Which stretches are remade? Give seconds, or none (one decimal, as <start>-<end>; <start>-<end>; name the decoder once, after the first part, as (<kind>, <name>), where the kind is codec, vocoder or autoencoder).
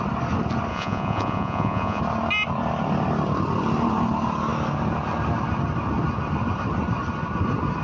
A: 0.7-2.0 (vocoder, Vocos)